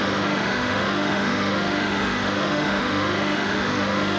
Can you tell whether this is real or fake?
fake